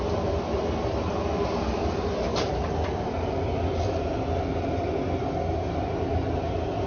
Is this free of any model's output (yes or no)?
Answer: yes